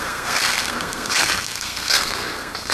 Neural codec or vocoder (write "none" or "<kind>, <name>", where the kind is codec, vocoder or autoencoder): codec, SNAC